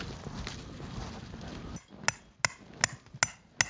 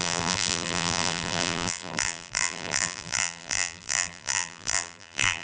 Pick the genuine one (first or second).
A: first